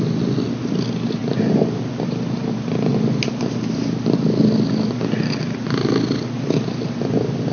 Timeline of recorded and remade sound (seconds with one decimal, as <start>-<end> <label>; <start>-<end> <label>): 0.0-1.2 recorded; 1.2-1.8 remade; 1.8-7.5 recorded